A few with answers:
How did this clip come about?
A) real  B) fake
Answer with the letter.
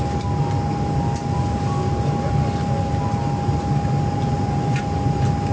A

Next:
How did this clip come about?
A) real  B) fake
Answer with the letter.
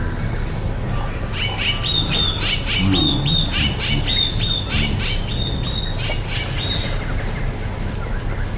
A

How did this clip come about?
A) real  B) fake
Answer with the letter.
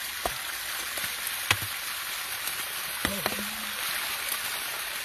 A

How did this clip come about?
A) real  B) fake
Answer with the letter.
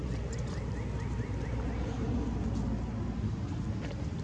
A